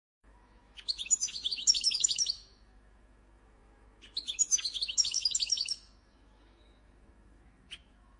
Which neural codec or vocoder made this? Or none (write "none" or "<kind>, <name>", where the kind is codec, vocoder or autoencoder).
autoencoder, DAC-VAE